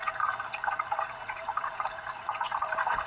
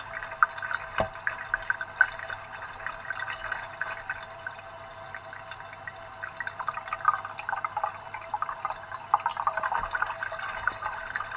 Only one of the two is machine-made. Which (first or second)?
first